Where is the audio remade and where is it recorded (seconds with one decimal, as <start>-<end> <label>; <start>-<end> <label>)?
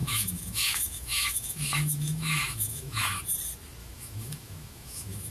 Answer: 0.0-3.2 remade; 3.2-3.8 recorded; 3.8-5.3 remade